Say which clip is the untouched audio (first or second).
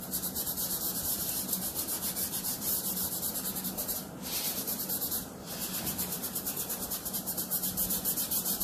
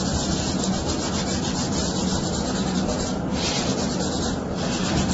second